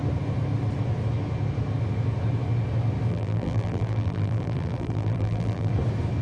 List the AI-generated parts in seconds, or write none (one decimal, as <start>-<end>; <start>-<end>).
3.1-5.7

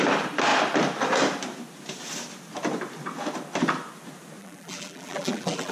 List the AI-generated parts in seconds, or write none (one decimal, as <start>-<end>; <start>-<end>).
4.4-5.7

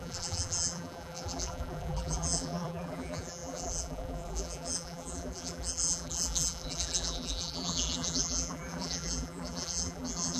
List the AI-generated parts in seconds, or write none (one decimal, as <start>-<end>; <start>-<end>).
0.0-10.4